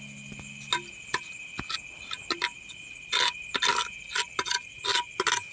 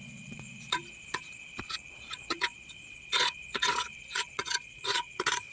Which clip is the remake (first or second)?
second